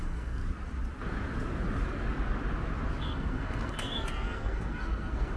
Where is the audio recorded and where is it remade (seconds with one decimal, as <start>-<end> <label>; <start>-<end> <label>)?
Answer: 0.0-0.4 remade; 0.4-3.0 recorded; 3.0-5.4 remade